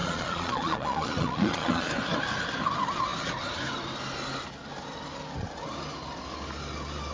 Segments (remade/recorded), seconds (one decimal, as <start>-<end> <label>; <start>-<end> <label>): 0.0-1.9 remade; 1.9-7.1 recorded